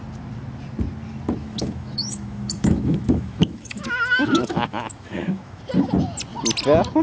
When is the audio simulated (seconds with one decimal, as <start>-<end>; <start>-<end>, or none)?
1.4-5.6